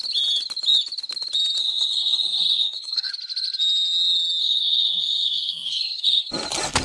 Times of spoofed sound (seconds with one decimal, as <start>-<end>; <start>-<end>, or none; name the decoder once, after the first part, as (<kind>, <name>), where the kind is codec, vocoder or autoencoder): 1.6-3.1 (codec, SNAC); 4.4-6.3